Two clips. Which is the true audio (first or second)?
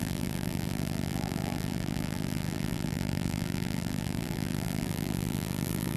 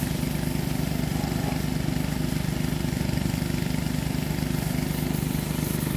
second